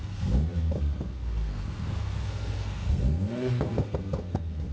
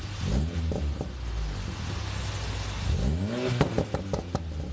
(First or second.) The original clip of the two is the second